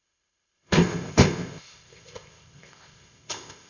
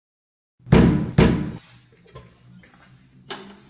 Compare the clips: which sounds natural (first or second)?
second